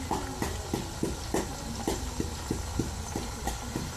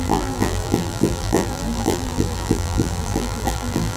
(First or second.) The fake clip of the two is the second